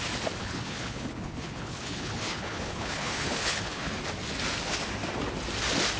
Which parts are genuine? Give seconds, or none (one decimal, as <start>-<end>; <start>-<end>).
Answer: 0.0-0.4; 4.0-6.0